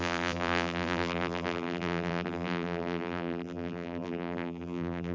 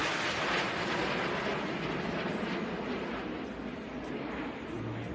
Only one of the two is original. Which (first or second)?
second